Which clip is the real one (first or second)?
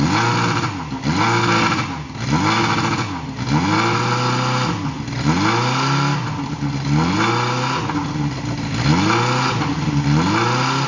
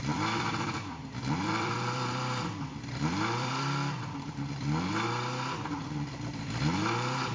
first